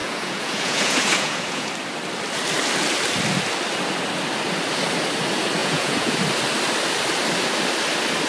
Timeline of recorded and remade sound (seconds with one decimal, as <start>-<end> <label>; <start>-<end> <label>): 0.0-1.7 remade; 1.7-5.6 recorded; 5.6-6.2 remade; 6.2-8.3 recorded